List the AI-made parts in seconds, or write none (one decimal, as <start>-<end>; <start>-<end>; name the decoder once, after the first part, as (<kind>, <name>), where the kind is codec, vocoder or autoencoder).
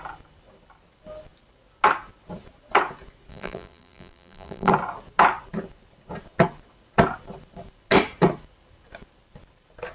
3.3-4.7 (vocoder, BigVGAN v2)